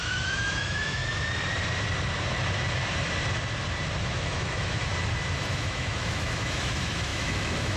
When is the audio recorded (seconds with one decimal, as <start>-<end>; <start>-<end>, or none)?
1.0-4.0; 4.9-5.5